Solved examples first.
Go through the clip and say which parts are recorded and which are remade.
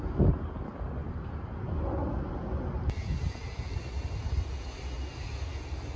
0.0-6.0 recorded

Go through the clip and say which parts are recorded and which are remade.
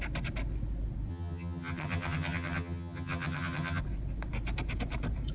0.0-1.1 recorded; 1.1-3.8 remade; 3.8-5.3 recorded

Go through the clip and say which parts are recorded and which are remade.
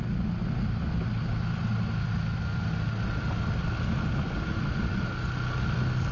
0.0-6.1 recorded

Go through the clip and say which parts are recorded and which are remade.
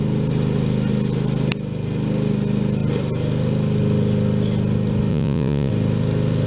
0.0-5.1 recorded; 5.1-5.7 remade; 5.7-6.5 recorded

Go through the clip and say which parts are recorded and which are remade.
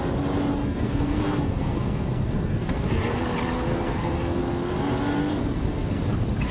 0.0-0.6 recorded; 0.6-3.2 remade; 3.2-3.7 recorded; 3.7-4.4 remade; 4.4-5.4 recorded; 5.4-6.0 remade; 6.0-6.5 recorded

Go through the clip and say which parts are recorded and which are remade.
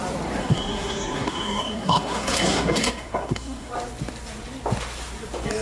0.0-0.4 recorded; 0.4-3.7 remade; 3.7-5.6 recorded